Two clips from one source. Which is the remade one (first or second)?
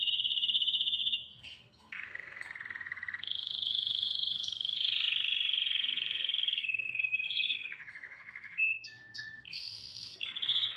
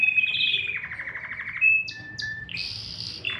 first